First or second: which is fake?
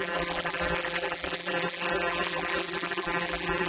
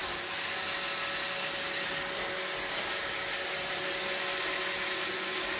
first